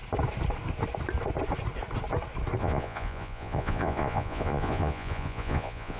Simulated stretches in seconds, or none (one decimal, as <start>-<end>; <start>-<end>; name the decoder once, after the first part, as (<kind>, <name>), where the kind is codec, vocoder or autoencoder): 2.6-6.0 (vocoder, Vocos)